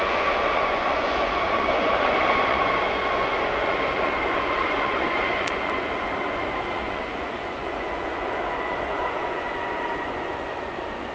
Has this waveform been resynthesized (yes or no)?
yes